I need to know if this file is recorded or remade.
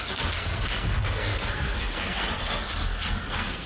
remade